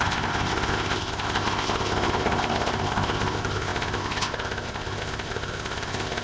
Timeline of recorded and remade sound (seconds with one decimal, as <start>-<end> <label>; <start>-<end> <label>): 0.0-6.2 remade